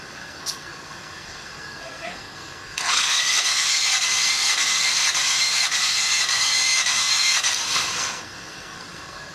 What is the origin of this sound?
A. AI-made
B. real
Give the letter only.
A